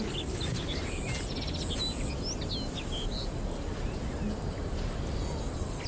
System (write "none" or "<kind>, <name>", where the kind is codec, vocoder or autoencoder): none